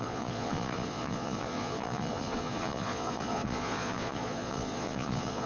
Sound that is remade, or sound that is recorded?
remade